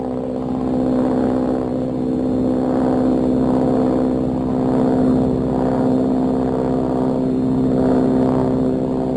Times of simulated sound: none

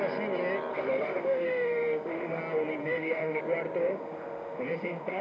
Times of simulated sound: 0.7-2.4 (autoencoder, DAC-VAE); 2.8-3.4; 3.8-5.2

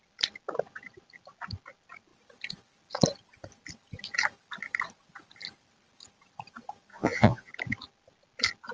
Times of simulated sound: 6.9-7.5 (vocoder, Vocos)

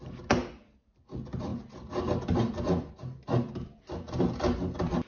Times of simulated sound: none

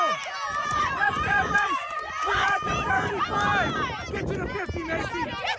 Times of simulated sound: 0.6-3.1 (vocoder, Vocos)

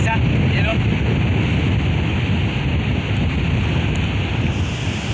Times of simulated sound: none

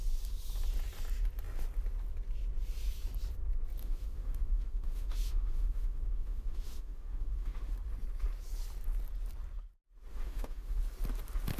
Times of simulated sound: 3.8-7.7 (autoencoder, DAC-VAE); 10.1-10.8

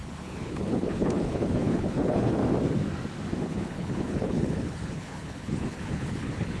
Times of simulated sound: 0.0-2.4 (codec, HILCodec); 3.4-6.6